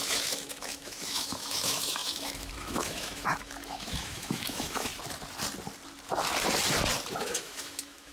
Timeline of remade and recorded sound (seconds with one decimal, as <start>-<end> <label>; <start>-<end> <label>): 0.0-4.9 remade; 4.9-7.2 recorded; 7.2-8.1 remade